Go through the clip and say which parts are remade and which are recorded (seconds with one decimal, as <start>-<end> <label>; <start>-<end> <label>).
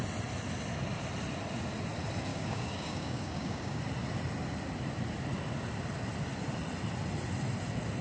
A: 0.0-2.3 recorded; 2.3-3.8 remade; 3.8-8.0 recorded